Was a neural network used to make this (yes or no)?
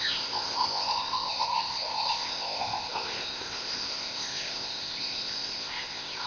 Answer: yes